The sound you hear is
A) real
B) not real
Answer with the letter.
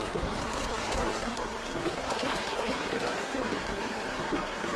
B